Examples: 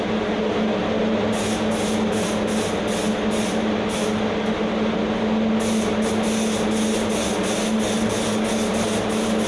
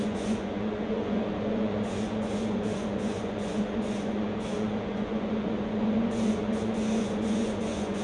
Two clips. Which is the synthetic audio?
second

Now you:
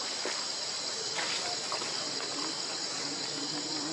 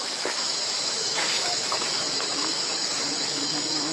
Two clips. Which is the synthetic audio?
second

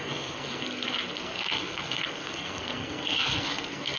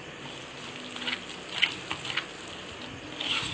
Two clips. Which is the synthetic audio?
first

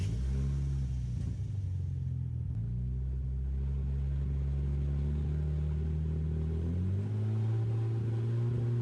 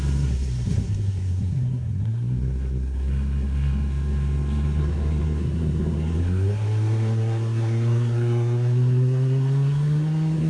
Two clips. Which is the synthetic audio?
second